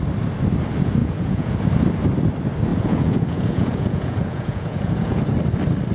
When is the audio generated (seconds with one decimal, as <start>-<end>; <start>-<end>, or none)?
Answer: 1.0-1.6; 2.7-5.2

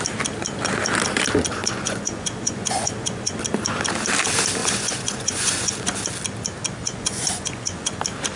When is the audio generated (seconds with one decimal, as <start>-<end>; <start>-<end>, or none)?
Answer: 1.6-3.4; 4.6-6.0; 6.8-8.0